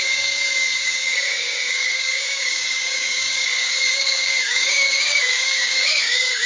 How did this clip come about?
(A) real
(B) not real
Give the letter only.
B